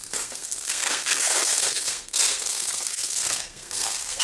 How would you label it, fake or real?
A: fake